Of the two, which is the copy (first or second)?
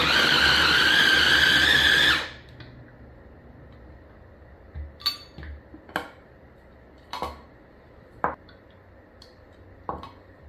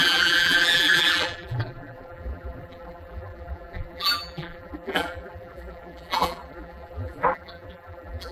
second